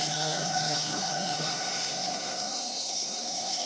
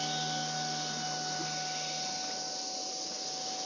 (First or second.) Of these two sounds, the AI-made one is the first